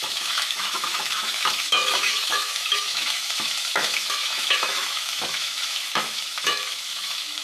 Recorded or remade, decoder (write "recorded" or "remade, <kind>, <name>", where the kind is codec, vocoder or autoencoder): remade, autoencoder, DAC-VAE